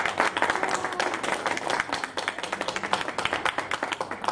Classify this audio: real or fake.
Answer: real